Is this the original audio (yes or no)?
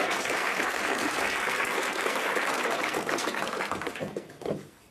no